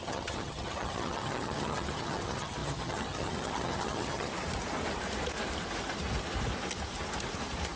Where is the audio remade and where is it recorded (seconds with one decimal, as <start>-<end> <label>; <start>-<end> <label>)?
0.0-4.3 remade; 4.3-7.8 recorded

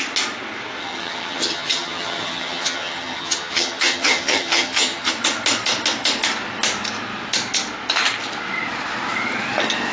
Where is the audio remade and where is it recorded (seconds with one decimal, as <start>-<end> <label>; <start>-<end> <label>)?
0.0-0.8 recorded; 0.8-5.1 remade; 5.1-9.9 recorded

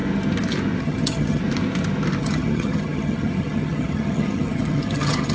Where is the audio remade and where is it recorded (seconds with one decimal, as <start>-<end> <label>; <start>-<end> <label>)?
0.0-0.8 recorded; 0.8-1.4 remade; 1.4-2.2 recorded; 2.2-5.3 remade